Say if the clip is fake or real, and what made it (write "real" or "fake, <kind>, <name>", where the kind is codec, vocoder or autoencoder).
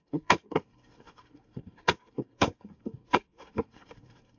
fake, codec, SNAC